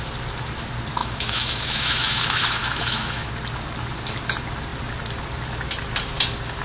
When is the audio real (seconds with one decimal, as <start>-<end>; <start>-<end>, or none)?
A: 0.0-1.0; 3.3-6.6